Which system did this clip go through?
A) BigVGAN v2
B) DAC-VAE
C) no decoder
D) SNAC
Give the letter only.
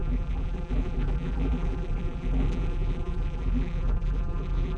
A